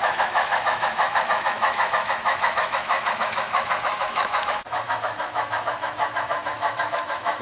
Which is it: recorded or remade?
remade